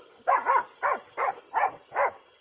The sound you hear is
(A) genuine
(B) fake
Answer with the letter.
B